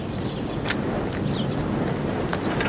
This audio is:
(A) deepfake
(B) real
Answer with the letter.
B